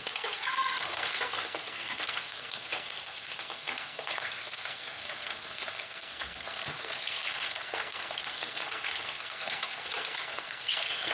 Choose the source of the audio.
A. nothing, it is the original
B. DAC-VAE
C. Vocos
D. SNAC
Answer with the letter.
D